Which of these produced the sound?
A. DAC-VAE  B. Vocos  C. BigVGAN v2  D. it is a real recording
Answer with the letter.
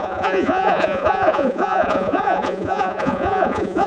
B